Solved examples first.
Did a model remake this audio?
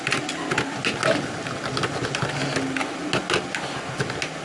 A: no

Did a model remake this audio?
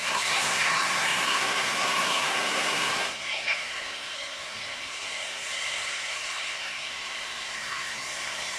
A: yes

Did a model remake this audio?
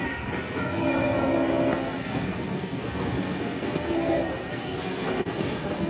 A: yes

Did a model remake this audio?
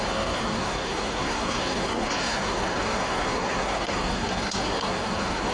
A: yes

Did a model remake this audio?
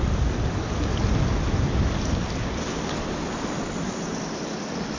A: no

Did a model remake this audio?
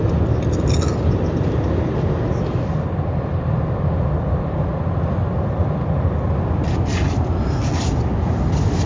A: no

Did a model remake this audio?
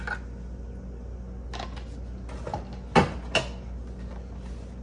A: no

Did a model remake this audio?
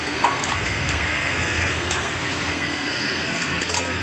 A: yes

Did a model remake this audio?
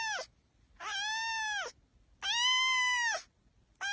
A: no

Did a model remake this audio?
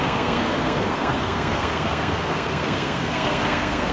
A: yes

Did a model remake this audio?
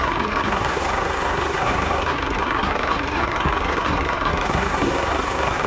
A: yes